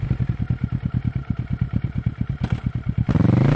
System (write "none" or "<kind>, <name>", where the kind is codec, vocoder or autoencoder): none